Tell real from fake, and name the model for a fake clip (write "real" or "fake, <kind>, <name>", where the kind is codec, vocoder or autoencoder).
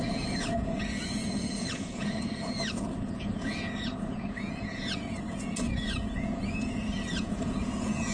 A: fake, vocoder, Vocos